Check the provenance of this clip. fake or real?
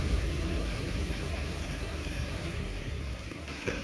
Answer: fake